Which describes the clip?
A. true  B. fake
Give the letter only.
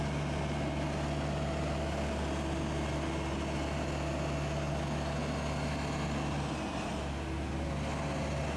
A